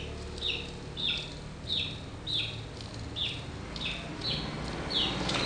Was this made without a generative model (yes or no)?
yes